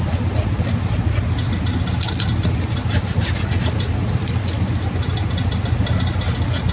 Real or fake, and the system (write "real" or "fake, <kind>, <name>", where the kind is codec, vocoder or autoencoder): real